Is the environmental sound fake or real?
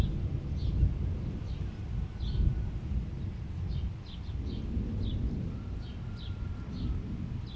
real